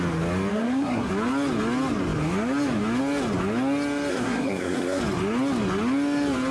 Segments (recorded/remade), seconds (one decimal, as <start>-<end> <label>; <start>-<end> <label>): 0.0-0.5 recorded; 0.5-1.1 remade; 1.1-4.1 recorded; 4.1-5.0 remade; 5.0-6.5 recorded

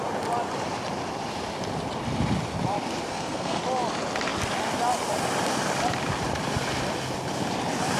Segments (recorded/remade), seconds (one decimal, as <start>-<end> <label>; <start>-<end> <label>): 0.0-3.1 recorded; 3.1-3.6 remade; 3.6-8.0 recorded

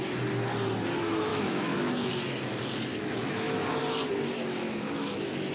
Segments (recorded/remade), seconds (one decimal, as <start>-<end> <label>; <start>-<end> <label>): 0.0-1.3 recorded; 1.3-2.1 remade; 2.1-2.9 recorded; 2.9-3.7 remade; 3.7-4.4 recorded; 4.4-5.5 remade